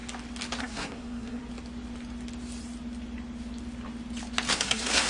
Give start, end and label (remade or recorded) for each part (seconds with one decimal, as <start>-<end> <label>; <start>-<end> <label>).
0.0-0.6 recorded; 0.6-1.4 remade; 1.4-4.5 recorded; 4.5-5.1 remade